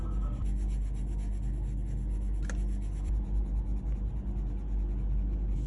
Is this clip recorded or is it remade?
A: recorded